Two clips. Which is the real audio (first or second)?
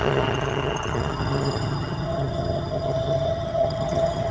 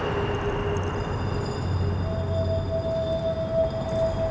second